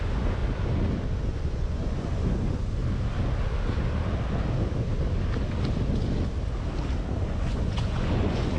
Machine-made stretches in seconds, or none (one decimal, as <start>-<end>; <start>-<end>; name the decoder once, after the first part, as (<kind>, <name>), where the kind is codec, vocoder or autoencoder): 0.0-0.4 (vocoder, Vocos); 1.3-2.8; 7.3-8.6